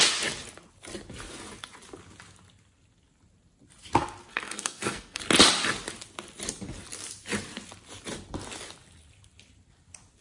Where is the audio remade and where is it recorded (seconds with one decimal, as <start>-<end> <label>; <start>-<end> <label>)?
0.0-4.3 recorded; 4.3-5.2 remade; 5.2-10.2 recorded